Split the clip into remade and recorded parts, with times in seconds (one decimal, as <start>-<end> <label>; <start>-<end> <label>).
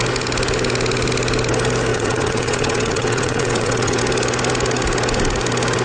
0.0-1.9 recorded; 1.9-4.0 remade; 4.0-5.8 recorded